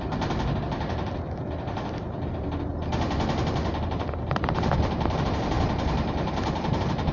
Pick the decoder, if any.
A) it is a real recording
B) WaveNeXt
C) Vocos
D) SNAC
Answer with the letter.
A